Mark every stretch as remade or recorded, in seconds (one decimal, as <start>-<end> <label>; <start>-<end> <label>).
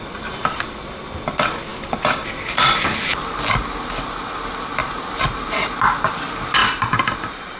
0.0-4.8 recorded; 4.8-5.7 remade; 5.7-6.6 recorded; 6.6-7.6 remade